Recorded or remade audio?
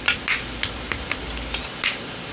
recorded